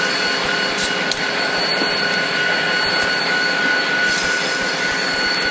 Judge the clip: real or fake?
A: fake